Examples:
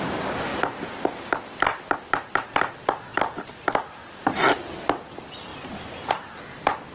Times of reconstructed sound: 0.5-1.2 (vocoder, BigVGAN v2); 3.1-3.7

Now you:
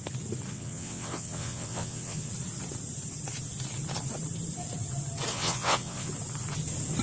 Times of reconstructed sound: 0.5-2.3 (vocoder, WaveNeXt); 5.3-6.1

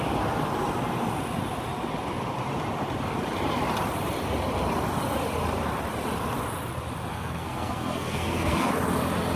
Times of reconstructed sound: 7.1-8.7 (codec, SNAC)

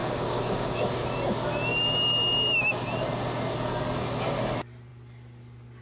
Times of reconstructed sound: 0.0-0.8 (codec, DAC)

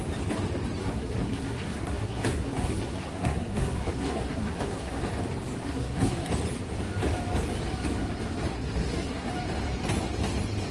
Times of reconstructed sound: 0.8-5.0 (codec, SNAC); 5.6-6.3; 8.5-9.3

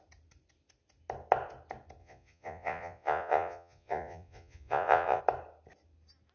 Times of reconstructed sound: 2.0-5.2 (vocoder, Vocos)

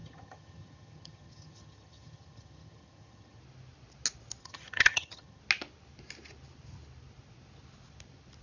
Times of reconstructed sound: 0.0-3.4 (vocoder, HiFi-GAN); 4.4-5.4

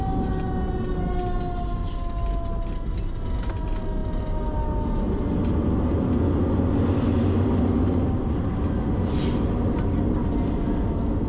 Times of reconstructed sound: none